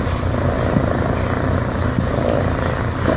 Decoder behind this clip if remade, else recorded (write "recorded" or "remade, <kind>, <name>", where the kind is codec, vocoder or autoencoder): recorded